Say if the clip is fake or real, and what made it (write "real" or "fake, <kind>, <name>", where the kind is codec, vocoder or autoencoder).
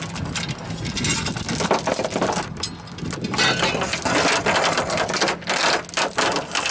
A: real